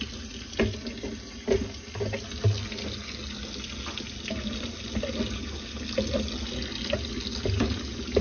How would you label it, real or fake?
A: real